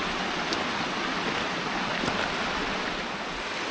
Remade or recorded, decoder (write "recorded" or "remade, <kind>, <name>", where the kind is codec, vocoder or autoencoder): recorded